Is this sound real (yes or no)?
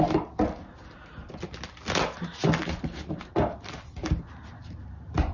yes